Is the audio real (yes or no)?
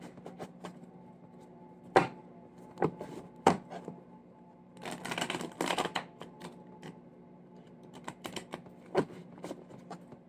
yes